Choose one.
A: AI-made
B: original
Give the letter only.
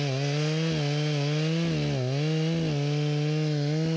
B